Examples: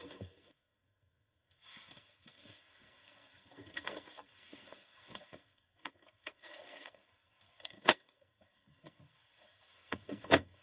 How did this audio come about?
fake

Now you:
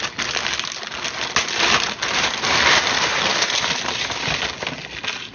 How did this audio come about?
real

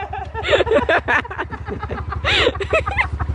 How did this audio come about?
real